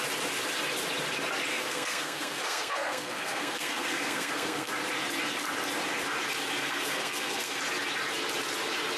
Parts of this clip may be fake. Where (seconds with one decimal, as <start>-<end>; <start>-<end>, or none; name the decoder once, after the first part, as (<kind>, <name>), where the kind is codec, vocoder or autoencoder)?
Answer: 1.5-4.7 (codec, SNAC); 6.6-7.6